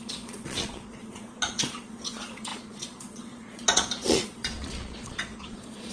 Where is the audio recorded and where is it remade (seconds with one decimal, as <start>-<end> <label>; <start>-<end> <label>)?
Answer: 0.0-5.9 remade